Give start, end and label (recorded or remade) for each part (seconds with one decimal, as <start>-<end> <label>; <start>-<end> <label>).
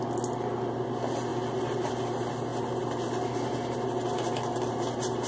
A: 0.0-5.3 recorded